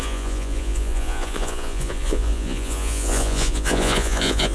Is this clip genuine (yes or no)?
no